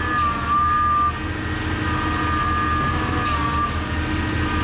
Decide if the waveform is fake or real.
real